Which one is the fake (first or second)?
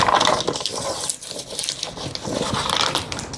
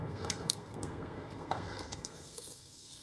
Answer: second